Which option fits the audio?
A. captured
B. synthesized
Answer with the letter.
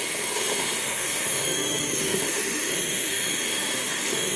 B